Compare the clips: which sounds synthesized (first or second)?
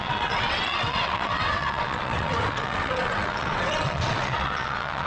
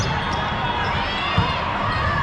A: first